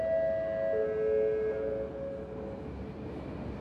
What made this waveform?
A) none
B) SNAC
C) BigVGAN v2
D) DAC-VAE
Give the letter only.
A